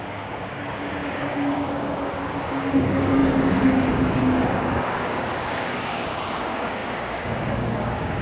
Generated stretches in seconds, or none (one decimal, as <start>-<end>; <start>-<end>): 0.0-8.2